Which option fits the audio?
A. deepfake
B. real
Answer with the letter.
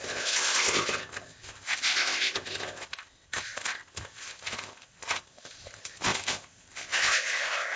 A